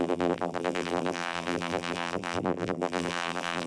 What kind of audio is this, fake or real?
fake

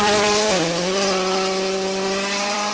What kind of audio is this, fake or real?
fake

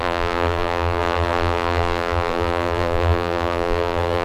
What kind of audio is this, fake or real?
fake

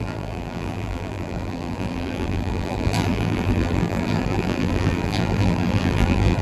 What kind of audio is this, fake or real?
fake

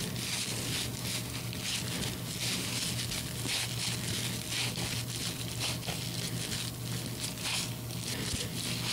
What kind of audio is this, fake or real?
real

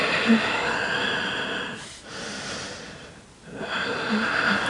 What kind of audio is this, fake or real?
real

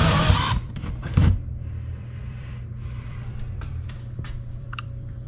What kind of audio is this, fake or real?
fake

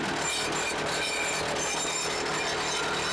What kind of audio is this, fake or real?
real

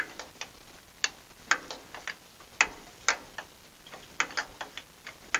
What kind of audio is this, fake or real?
real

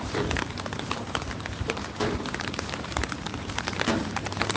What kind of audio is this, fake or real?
fake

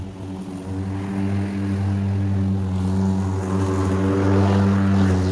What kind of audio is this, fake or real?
real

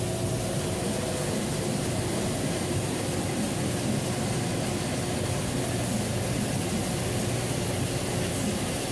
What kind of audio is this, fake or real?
real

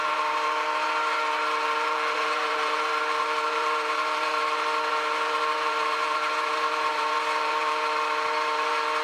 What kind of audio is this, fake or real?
fake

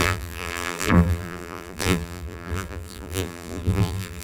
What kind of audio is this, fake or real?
fake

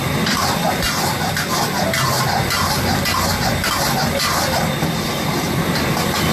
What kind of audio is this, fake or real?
real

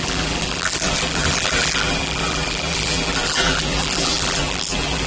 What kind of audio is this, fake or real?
fake